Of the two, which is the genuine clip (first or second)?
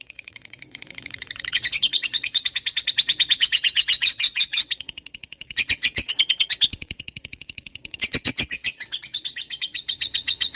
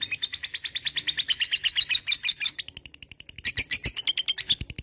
second